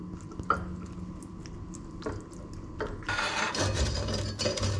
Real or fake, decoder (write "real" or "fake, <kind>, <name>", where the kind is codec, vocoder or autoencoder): real